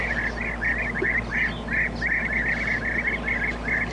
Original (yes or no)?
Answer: yes